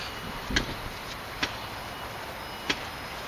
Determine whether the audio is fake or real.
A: real